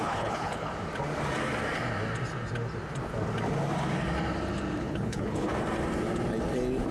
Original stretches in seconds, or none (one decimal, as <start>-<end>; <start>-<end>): 0.7-4.8; 5.5-6.9